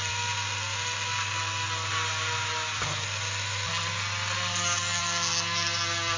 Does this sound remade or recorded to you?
recorded